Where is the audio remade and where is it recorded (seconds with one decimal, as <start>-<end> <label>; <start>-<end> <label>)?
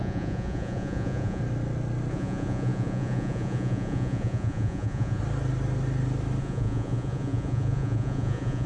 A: 0.0-1.4 remade; 1.4-2.1 recorded; 2.1-5.2 remade; 5.2-6.4 recorded; 6.4-8.7 remade